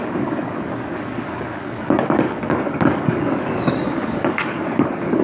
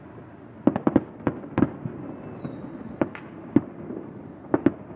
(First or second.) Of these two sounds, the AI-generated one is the first